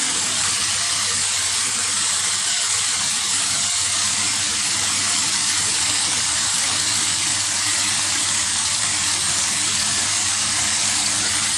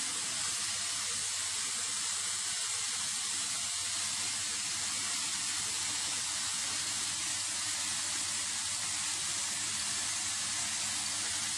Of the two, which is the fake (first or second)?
first